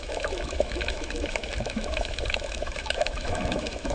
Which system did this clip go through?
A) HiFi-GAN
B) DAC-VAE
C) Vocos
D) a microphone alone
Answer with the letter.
B